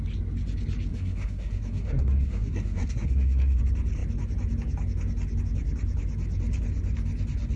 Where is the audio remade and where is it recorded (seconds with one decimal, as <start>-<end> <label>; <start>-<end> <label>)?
0.0-0.9 recorded; 0.9-3.6 remade; 3.6-7.6 recorded